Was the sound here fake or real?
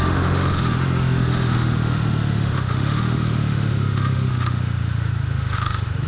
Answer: fake